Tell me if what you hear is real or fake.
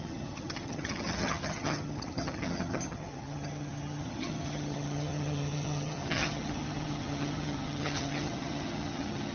fake